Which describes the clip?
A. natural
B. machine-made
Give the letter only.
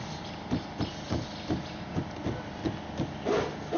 A